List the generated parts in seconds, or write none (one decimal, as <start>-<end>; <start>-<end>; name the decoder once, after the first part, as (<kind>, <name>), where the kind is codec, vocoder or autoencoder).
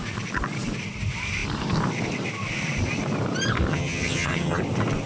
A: 3.7-4.6 (vocoder, HiFi-GAN)